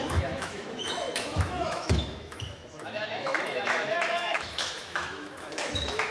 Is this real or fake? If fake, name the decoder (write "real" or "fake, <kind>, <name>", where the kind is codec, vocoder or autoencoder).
fake, autoencoder, DAC-VAE